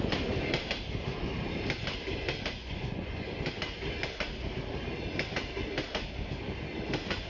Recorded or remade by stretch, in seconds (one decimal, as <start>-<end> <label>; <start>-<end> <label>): 0.0-2.6 recorded; 2.6-3.5 remade; 3.5-7.3 recorded